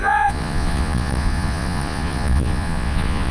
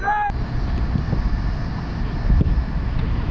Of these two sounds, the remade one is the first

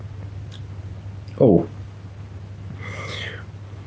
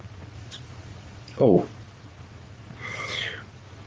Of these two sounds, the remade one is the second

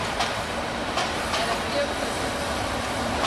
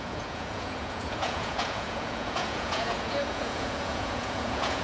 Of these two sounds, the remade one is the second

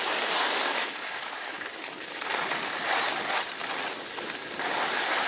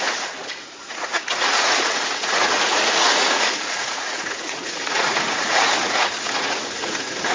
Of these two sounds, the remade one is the second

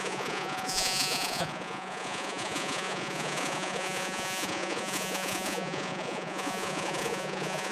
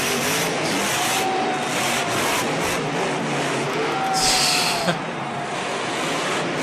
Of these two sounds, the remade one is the first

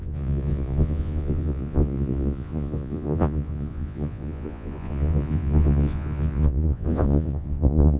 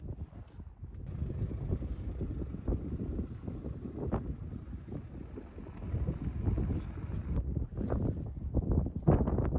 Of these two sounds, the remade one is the first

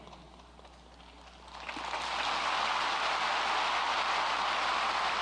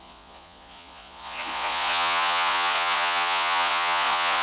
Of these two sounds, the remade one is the second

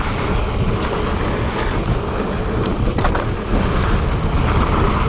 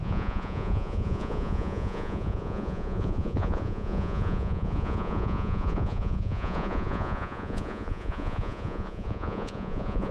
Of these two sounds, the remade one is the second